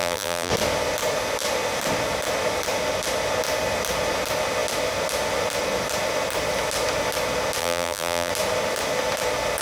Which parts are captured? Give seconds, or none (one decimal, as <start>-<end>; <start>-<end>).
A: 0.5-7.6; 8.3-9.6